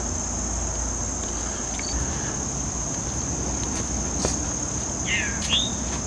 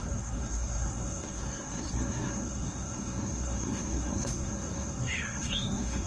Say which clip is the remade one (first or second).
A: second